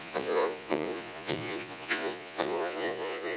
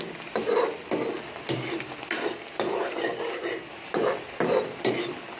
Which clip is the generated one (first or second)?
first